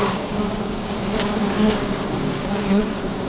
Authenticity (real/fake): fake